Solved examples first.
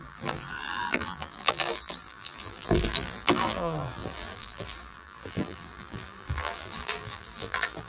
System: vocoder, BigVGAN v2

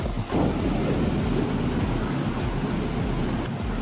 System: none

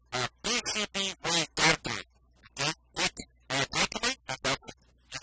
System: none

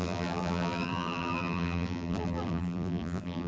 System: vocoder, BigVGAN v2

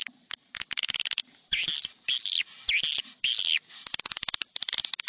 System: none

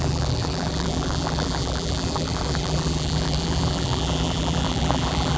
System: vocoder, BigVGAN v2